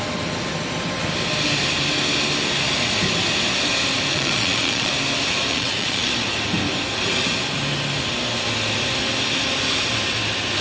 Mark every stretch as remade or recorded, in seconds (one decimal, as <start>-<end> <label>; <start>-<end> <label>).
0.0-4.1 recorded; 4.1-4.9 remade; 4.9-5.5 recorded; 5.5-6.1 remade; 6.1-10.6 recorded